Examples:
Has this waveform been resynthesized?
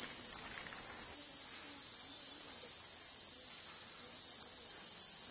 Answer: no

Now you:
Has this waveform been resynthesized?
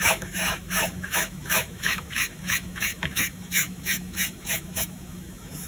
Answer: yes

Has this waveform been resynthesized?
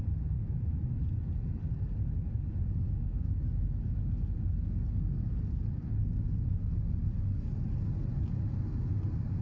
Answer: no